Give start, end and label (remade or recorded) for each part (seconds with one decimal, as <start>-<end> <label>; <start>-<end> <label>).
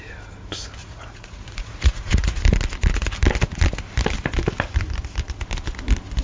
0.0-0.8 recorded; 0.8-2.4 remade; 2.4-6.2 recorded